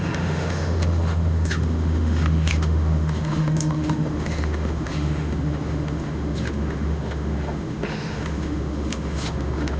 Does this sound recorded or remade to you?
remade